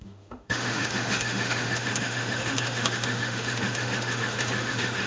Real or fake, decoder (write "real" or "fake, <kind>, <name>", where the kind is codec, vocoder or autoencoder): fake, autoencoder, DAC-VAE